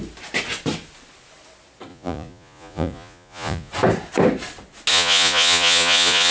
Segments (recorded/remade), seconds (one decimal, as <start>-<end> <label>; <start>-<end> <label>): 0.0-1.9 recorded; 1.9-3.7 remade; 3.7-4.9 recorded; 4.9-6.3 remade